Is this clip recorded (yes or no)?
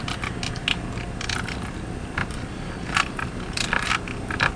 yes